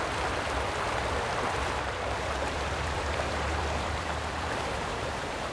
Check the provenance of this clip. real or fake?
fake